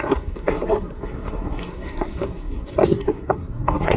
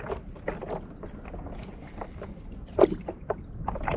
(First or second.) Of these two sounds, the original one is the second